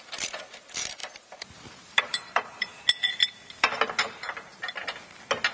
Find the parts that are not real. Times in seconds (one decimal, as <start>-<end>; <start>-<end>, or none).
0.0-2.7; 4.0-4.5